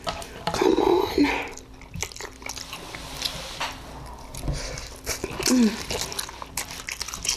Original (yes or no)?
yes